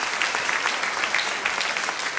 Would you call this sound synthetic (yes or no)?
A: no